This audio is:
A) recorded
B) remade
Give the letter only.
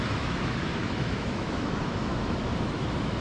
B